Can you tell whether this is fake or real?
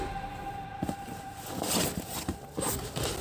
real